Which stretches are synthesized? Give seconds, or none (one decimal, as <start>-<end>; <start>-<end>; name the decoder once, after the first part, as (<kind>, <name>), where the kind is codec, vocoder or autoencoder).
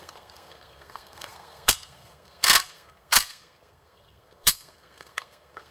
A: 0.0-5.7 (codec, SNAC)